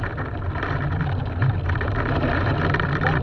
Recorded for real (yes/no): yes